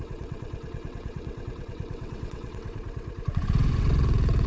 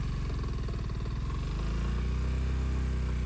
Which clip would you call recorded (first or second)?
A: second